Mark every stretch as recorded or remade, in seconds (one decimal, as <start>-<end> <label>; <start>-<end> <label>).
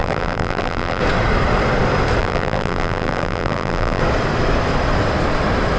0.0-1.0 remade; 1.0-2.2 recorded; 2.2-4.0 remade; 4.0-5.8 recorded